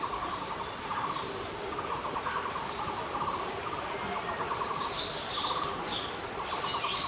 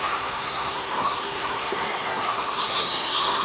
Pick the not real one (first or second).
second